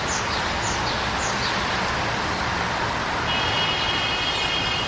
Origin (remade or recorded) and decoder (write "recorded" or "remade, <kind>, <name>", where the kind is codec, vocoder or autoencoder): recorded